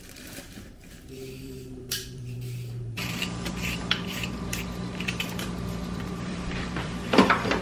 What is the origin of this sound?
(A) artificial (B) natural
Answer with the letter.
A